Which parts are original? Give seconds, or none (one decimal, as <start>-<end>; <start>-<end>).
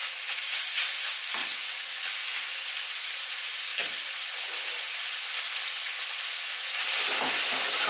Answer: 0.0-1.4; 2.1-7.9